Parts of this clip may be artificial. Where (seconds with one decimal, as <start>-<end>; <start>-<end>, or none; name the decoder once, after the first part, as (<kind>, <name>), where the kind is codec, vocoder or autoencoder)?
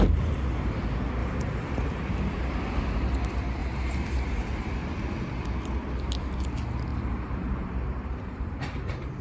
1.2-2.0 (vocoder, BigVGAN v2); 3.6-4.7; 6.9-9.2